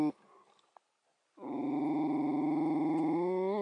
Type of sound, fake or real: real